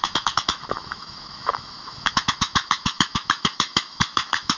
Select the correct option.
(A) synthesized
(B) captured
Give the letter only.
A